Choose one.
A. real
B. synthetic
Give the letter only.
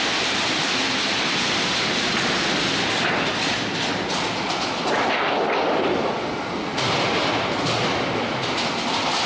A